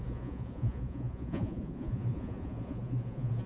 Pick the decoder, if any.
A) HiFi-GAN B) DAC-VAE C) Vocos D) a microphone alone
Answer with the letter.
C